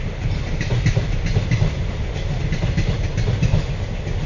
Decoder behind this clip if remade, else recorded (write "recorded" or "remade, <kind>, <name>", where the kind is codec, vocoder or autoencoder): recorded